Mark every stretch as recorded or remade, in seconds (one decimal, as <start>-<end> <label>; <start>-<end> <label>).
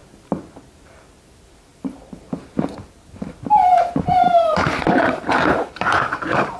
0.0-0.6 recorded; 0.6-1.7 remade; 1.7-4.2 recorded; 4.2-6.6 remade